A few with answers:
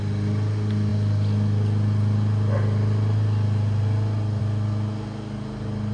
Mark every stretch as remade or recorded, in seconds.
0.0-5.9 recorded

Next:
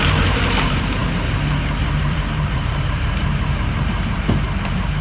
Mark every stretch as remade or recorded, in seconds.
0.0-1.0 remade; 1.0-2.0 recorded; 2.0-5.0 remade

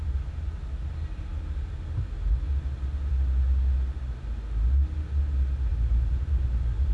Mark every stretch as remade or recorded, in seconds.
0.0-5.7 recorded; 5.7-6.9 remade

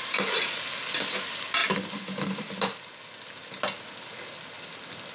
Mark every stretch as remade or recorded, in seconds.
0.0-5.1 recorded

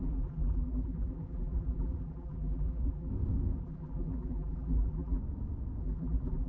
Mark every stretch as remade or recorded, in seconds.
0.0-3.1 remade; 3.1-3.6 recorded; 3.6-5.2 remade; 5.2-5.8 recorded; 5.8-6.5 remade

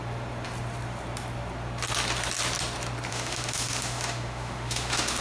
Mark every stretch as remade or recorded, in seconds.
0.0-3.1 recorded; 3.1-5.2 remade

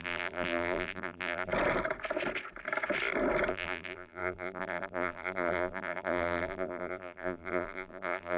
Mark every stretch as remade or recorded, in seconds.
0.0-1.5 remade; 1.5-3.5 recorded; 3.5-8.4 remade